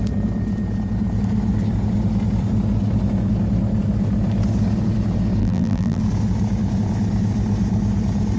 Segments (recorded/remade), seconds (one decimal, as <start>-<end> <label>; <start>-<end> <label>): 0.0-5.4 recorded; 5.4-6.0 remade; 6.0-8.4 recorded